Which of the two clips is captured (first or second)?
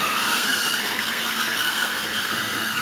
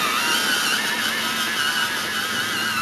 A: second